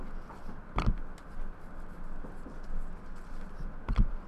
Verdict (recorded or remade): recorded